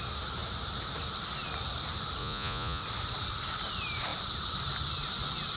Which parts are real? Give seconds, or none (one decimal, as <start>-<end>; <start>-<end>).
0.0-2.2; 2.8-5.6